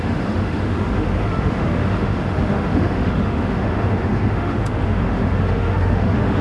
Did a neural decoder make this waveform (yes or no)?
yes